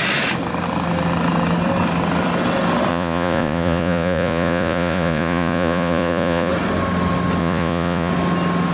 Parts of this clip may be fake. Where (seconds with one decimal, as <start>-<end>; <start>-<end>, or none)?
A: 2.9-6.5; 7.4-8.1